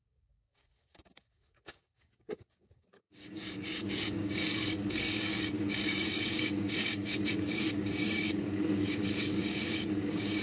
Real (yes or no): no